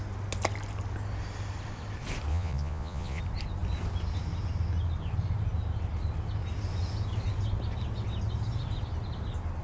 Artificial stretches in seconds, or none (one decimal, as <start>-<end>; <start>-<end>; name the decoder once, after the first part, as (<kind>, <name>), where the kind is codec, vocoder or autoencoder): 2.3-3.2 (vocoder, Vocos)